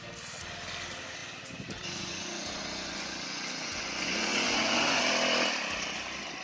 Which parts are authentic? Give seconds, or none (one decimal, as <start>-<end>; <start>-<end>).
0.0-1.2; 5.0-6.4